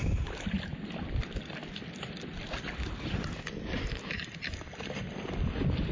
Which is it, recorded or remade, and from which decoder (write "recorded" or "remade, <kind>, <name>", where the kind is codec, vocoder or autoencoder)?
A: remade, vocoder, BigVGAN v2